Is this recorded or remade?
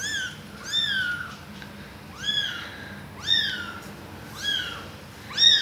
recorded